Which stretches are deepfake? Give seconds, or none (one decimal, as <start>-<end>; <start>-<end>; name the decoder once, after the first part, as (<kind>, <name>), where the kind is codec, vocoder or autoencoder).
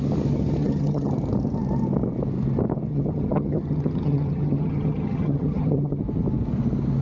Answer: 0.6-1.1 (vocoder, HiFi-GAN); 2.9-6.0